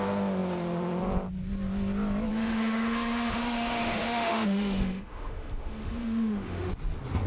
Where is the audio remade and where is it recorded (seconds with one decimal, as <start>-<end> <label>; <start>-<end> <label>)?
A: 0.0-2.3 recorded; 2.3-6.7 remade; 6.7-7.3 recorded